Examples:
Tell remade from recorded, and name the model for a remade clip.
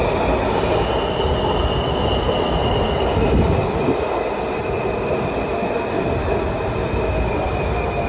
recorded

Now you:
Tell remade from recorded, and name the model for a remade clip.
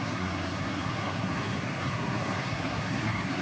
remade, codec, SNAC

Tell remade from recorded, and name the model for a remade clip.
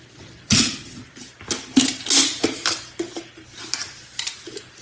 recorded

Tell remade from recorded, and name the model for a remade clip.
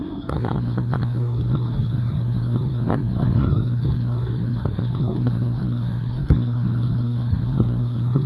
remade, codec, SNAC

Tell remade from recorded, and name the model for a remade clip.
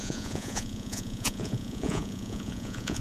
remade, vocoder, Vocos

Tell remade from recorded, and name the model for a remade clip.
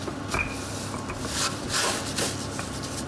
recorded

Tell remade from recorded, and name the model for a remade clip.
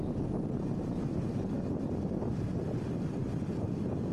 recorded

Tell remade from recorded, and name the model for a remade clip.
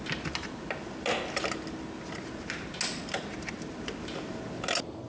recorded